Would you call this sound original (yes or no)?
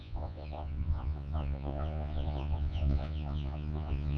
no